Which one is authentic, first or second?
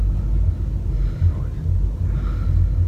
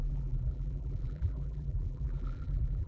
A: first